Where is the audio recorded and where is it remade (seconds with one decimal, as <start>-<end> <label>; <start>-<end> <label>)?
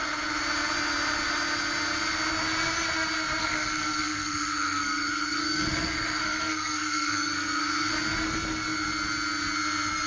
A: 0.0-3.4 recorded; 3.4-7.9 remade; 7.9-10.1 recorded